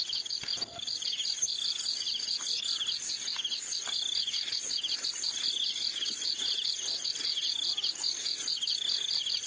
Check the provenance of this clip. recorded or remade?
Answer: recorded